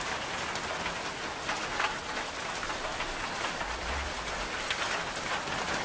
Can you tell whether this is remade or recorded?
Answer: recorded